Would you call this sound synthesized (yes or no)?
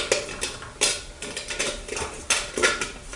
no